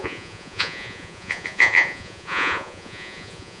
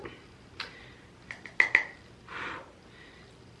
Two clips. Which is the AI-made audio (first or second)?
first